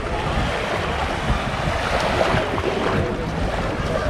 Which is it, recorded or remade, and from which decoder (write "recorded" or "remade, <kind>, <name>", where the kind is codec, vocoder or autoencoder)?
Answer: recorded